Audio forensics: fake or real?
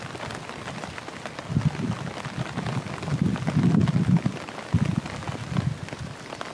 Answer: real